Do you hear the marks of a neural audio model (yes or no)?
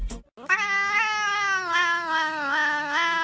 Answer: no